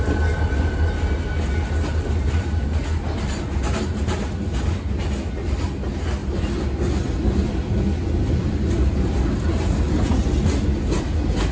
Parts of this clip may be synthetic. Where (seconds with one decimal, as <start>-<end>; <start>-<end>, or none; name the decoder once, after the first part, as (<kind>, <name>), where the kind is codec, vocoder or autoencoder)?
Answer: none